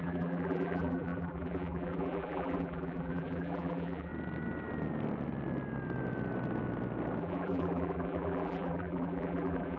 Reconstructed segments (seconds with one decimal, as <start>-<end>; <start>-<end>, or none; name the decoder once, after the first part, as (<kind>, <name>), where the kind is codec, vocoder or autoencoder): 0.0-4.1 (vocoder, BigVGAN v2); 7.2-9.8